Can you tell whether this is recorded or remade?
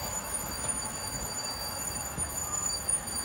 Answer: remade